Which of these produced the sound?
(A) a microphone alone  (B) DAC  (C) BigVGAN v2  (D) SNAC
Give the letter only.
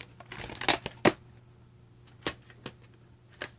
A